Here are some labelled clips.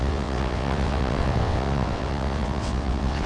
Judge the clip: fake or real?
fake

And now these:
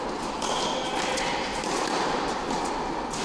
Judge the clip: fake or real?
real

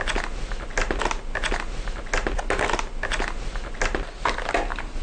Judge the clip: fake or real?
real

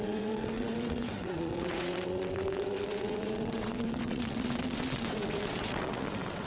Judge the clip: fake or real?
fake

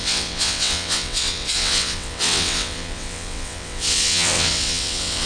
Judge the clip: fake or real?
fake